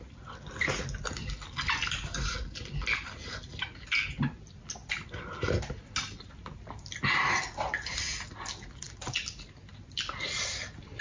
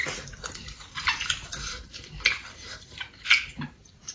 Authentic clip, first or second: first